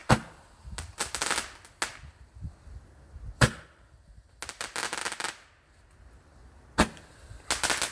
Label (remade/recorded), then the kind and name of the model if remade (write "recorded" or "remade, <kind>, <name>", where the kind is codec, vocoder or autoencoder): recorded